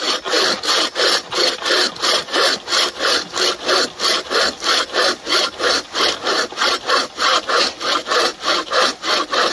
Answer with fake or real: real